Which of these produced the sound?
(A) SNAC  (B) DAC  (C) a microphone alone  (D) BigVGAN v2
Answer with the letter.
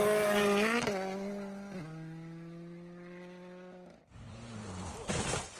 C